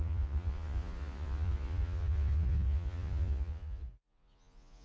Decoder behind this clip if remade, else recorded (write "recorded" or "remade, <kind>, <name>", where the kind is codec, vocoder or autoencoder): remade, vocoder, Vocos